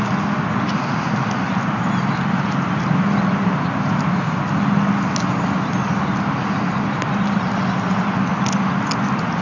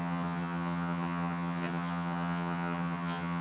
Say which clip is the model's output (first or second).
second